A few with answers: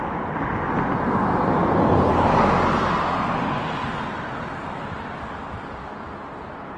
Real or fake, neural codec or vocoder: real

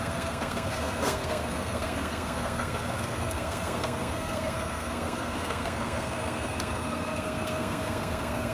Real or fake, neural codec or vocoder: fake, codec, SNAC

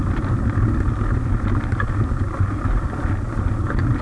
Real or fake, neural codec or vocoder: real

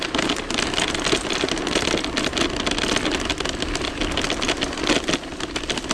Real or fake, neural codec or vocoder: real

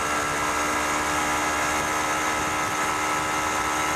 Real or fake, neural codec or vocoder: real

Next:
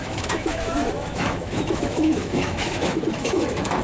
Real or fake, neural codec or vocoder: fake, autoencoder, DAC-VAE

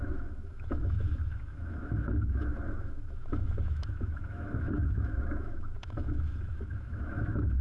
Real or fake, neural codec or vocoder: fake, autoencoder, DAC-VAE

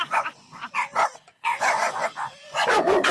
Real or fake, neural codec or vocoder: fake, vocoder, Vocos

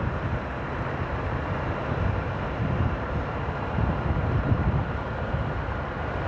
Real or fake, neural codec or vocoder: fake, vocoder, BigVGAN v2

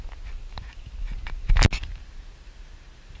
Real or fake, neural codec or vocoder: real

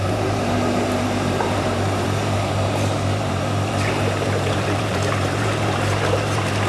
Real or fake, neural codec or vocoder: fake, vocoder, BigVGAN v2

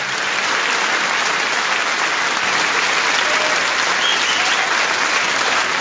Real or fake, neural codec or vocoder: real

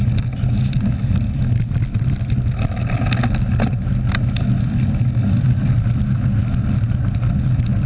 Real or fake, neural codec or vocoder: real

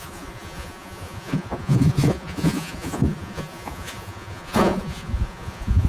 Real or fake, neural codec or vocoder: fake, vocoder, Vocos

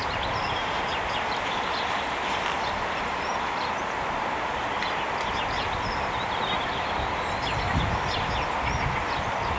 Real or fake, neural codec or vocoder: real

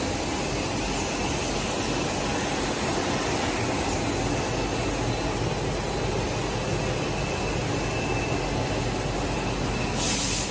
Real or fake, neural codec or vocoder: real